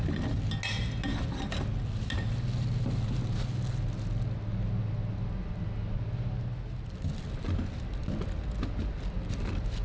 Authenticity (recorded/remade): recorded